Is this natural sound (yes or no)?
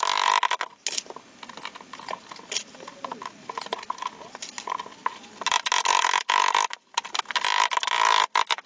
yes